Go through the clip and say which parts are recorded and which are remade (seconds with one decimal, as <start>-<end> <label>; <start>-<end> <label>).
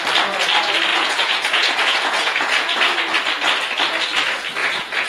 0.0-0.9 recorded; 0.9-2.8 remade; 2.8-4.6 recorded; 4.6-5.1 remade